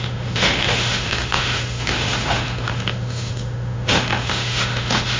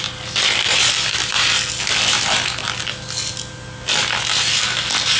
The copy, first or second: first